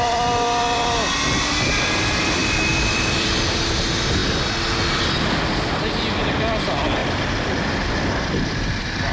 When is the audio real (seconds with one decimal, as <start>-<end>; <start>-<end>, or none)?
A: 0.0-2.4; 3.4-7.0